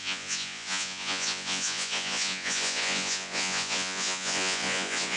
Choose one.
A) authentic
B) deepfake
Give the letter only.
B